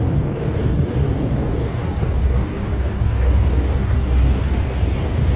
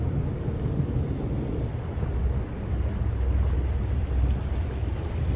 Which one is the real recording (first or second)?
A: second